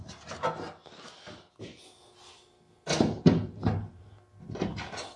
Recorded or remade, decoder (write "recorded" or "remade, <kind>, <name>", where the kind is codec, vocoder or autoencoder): recorded